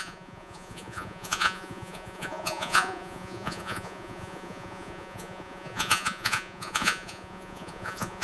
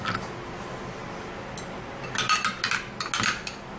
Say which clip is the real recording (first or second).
second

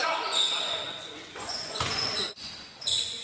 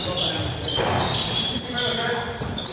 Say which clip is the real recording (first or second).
second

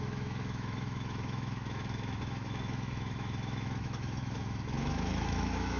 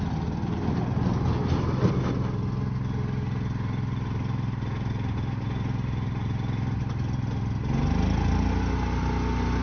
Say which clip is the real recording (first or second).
second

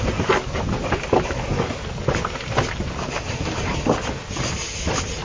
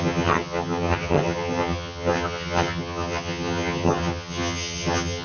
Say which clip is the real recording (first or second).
first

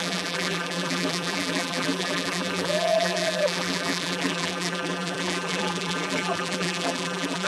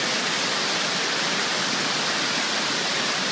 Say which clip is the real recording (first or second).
second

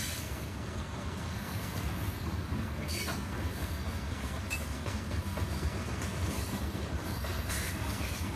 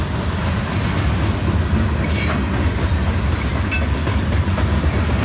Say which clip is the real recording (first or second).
second